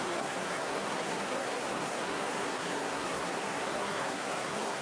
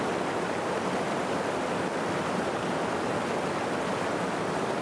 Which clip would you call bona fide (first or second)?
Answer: second